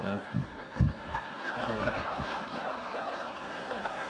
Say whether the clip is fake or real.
fake